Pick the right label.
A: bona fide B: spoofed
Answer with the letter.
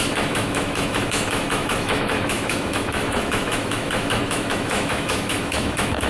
B